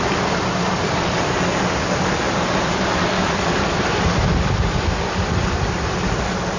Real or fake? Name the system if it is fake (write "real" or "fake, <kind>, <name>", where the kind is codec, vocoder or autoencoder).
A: real